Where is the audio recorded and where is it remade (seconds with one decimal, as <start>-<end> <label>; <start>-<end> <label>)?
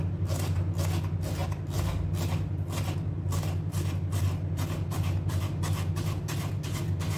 0.0-7.2 recorded